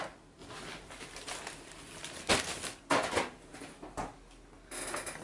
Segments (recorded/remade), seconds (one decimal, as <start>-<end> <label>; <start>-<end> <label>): 0.0-5.2 recorded